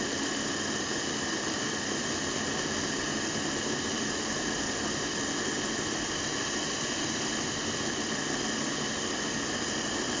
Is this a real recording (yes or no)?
yes